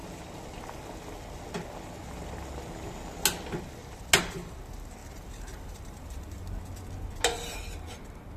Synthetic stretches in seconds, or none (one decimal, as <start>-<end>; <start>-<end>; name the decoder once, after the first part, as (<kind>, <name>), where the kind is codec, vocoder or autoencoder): 5.0-6.6 (vocoder, BigVGAN v2)